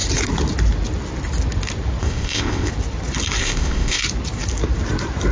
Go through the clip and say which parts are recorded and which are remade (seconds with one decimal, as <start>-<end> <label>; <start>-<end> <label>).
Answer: 0.0-2.0 recorded; 2.0-2.7 remade; 2.7-3.4 recorded; 3.4-4.0 remade; 4.0-5.3 recorded